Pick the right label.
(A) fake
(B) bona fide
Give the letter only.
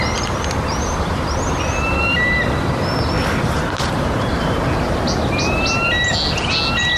B